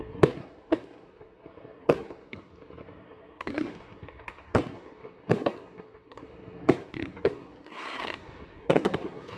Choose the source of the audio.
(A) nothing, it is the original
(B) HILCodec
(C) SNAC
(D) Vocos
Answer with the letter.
C